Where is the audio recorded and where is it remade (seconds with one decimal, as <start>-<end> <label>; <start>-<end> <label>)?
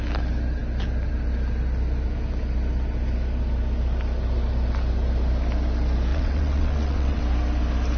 0.0-6.1 recorded; 6.1-7.2 remade; 7.2-8.0 recorded